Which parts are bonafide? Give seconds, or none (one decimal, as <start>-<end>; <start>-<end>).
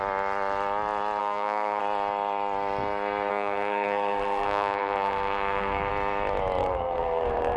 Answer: 0.0-1.2; 1.8-3.3; 5.9-6.6